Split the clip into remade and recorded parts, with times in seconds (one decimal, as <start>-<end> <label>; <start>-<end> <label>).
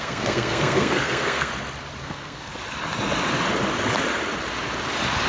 0.0-1.5 remade; 1.5-2.0 recorded; 2.0-2.5 remade; 2.5-5.3 recorded